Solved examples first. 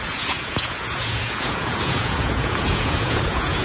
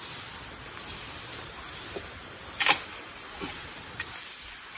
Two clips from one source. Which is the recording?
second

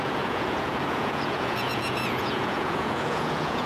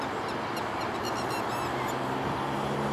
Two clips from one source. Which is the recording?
second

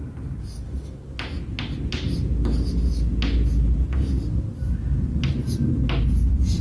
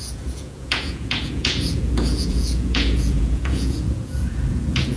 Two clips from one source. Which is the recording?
first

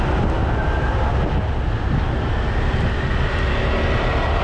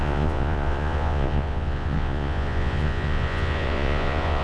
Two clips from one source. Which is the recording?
first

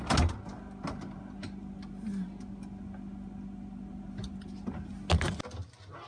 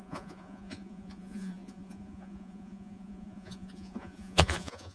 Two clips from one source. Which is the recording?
first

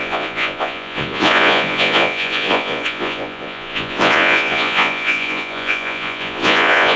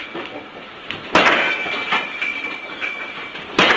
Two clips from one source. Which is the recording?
second